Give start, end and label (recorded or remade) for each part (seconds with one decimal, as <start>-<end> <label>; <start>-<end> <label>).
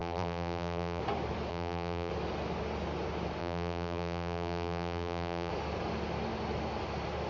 0.0-1.0 remade; 1.0-1.5 recorded; 1.5-2.1 remade; 2.1-3.4 recorded; 3.4-5.5 remade; 5.5-7.3 recorded